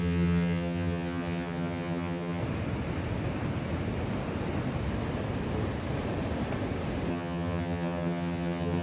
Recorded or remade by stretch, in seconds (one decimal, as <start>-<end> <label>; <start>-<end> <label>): 0.0-2.4 remade; 2.4-7.1 recorded; 7.1-8.8 remade